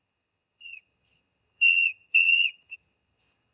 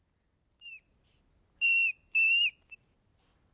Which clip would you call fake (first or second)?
first